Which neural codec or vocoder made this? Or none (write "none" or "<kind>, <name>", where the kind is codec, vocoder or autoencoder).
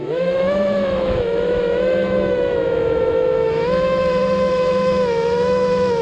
autoencoder, DAC-VAE